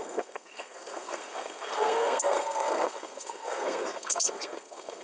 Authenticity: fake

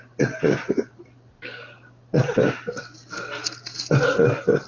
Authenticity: real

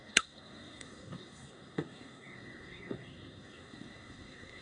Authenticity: fake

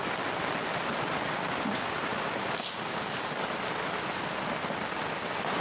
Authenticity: real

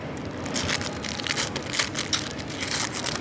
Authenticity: real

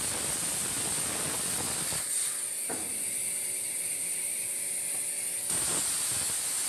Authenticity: real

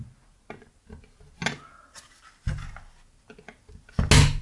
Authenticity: real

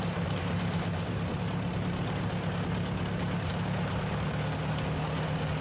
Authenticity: real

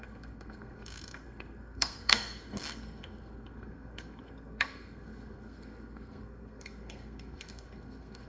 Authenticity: fake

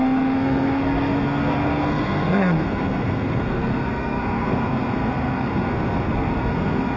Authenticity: fake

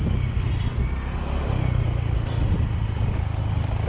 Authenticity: real